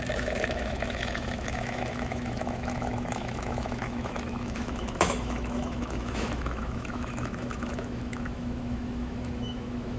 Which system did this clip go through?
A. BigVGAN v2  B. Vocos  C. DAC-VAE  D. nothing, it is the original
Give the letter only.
C